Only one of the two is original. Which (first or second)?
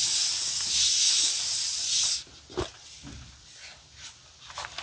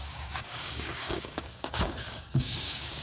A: first